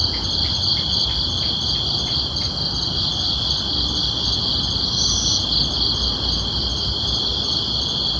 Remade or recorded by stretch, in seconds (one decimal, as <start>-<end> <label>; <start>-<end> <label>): 0.0-8.2 recorded